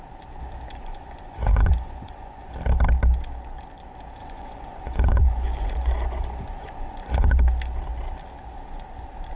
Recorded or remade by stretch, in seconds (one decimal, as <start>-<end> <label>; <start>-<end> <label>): 0.0-0.8 recorded; 0.8-2.5 remade; 2.5-4.2 recorded; 4.2-7.4 remade; 7.4-9.4 recorded